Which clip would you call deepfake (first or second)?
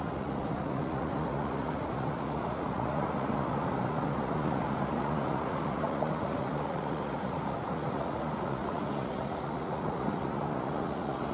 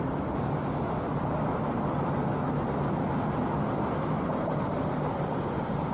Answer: first